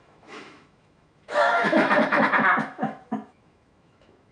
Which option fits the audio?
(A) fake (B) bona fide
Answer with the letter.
A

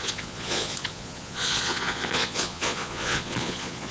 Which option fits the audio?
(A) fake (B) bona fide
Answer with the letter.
A